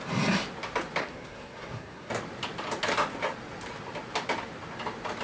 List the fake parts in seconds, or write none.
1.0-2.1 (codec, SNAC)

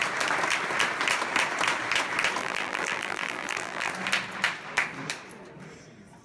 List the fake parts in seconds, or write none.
2.4-3.9 (vocoder, BigVGAN v2)

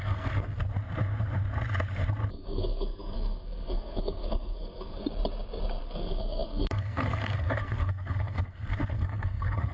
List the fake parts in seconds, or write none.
0.0-0.6 (codec, SNAC); 2.3-5.0; 5.8-9.7